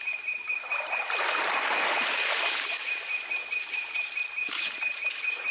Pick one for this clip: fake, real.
real